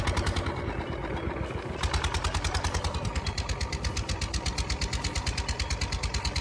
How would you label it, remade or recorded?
recorded